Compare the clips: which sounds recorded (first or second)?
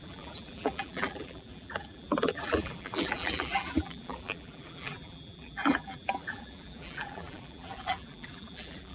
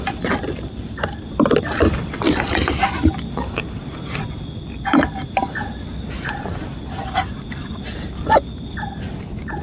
second